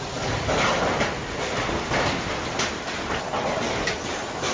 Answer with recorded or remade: recorded